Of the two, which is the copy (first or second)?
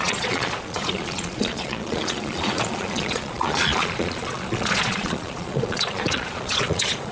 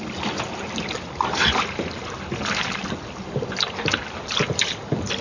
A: first